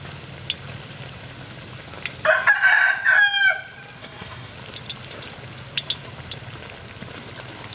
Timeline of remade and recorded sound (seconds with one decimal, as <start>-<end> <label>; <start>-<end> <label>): 0.0-4.0 recorded; 4.0-4.5 remade; 4.5-7.7 recorded